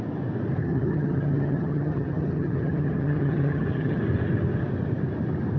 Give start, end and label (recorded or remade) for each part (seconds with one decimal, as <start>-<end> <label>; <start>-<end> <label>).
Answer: 0.0-0.6 recorded; 0.6-4.0 remade; 4.0-5.6 recorded